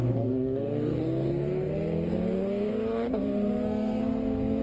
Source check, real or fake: fake